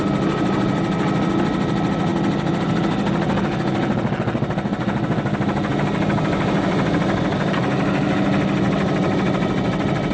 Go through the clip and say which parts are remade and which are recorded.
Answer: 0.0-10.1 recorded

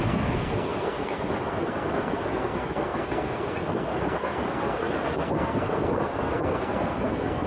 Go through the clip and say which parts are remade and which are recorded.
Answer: 0.0-7.5 remade

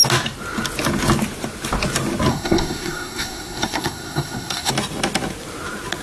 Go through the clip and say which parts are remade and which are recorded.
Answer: 0.0-2.3 recorded; 2.3-4.7 remade; 4.7-6.0 recorded